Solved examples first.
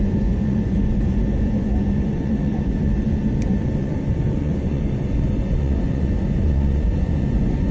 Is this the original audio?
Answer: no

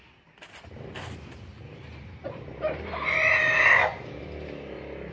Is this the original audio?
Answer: yes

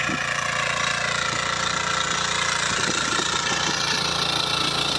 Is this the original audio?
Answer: no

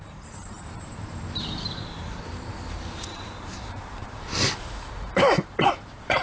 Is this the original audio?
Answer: no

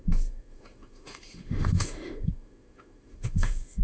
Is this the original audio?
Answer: no